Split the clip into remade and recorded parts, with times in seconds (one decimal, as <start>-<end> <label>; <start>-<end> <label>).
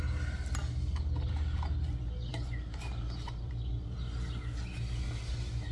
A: 0.0-2.3 recorded; 2.3-3.7 remade; 3.7-5.7 recorded